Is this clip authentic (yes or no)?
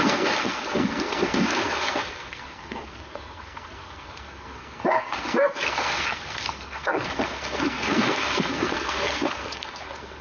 no